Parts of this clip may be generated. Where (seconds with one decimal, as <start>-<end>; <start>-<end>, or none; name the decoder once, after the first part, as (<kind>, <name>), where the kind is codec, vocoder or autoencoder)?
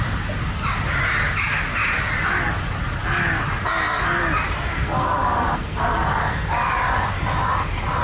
4.7-6.7 (codec, SNAC)